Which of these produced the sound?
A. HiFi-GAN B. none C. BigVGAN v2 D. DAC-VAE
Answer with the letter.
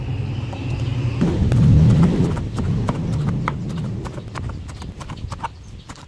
B